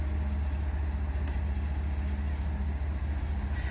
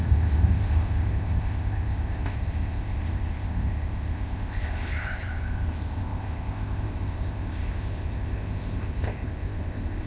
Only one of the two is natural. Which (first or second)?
first